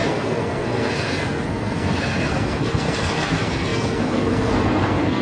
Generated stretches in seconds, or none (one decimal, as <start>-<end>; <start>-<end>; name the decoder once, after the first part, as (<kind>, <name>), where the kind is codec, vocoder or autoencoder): 0.0-5.2 (codec, SNAC)